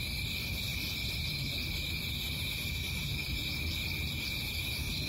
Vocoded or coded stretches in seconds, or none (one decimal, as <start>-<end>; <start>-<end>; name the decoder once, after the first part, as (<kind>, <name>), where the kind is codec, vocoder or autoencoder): none